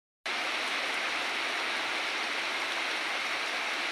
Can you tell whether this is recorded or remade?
recorded